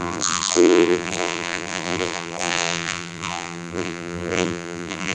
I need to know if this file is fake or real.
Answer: fake